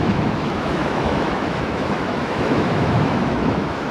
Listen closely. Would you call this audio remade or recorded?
remade